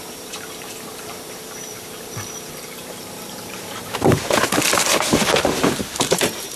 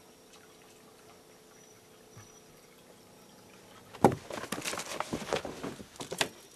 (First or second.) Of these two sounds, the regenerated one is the first